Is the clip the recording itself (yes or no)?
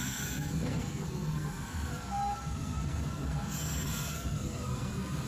no